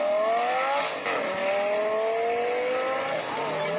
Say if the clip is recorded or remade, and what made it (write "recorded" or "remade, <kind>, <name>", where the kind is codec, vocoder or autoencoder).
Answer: recorded